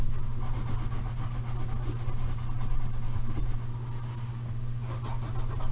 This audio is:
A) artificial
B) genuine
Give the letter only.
B